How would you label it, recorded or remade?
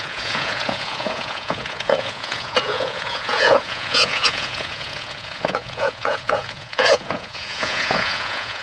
remade